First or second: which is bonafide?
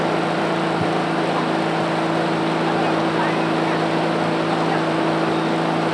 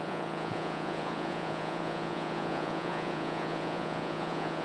first